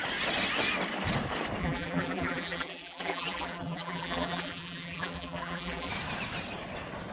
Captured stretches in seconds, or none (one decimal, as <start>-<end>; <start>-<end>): 0.0-1.6; 5.9-7.1